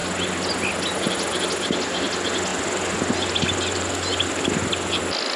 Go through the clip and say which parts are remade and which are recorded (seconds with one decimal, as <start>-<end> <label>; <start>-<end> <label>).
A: 0.0-0.6 remade; 0.6-2.5 recorded; 2.5-5.0 remade; 5.0-5.4 recorded